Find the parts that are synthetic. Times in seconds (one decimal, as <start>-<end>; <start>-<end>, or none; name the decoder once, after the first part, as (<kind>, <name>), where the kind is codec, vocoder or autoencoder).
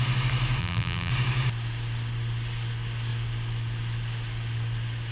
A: 0.6-1.1 (vocoder, BigVGAN v2)